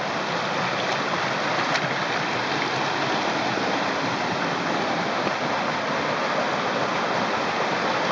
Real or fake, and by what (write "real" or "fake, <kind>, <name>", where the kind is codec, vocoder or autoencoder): real